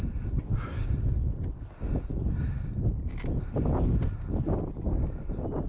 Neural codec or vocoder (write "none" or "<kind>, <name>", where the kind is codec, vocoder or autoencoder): none